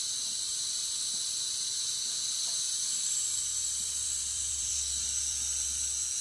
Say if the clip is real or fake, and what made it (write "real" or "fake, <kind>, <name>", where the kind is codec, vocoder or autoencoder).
fake, vocoder, BigVGAN v2